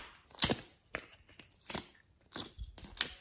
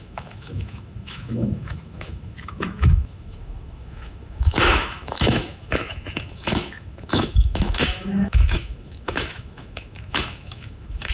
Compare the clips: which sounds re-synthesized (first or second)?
second